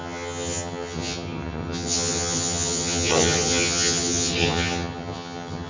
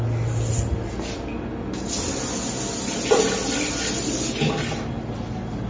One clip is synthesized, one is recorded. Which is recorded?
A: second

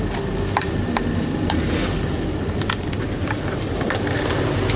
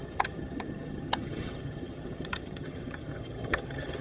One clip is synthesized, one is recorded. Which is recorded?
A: first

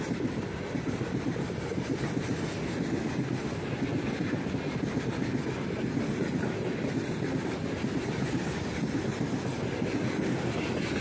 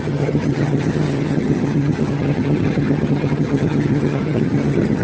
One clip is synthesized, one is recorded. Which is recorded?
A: first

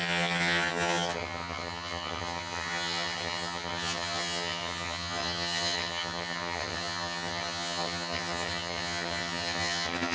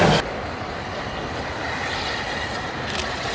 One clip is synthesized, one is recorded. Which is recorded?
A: second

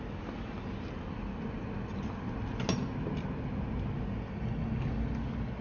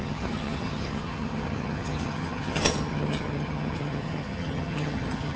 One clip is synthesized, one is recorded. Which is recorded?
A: first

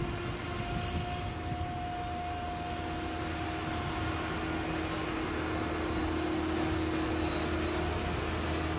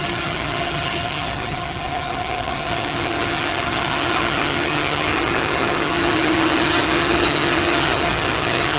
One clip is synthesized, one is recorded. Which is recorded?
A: first